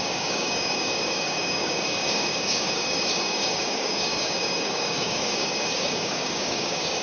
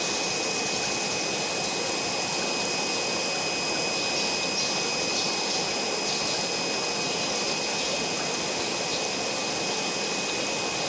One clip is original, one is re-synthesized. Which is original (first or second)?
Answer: second